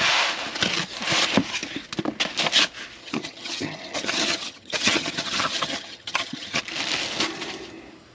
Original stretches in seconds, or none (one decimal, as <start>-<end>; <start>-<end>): 0.0-3.0; 6.6-8.1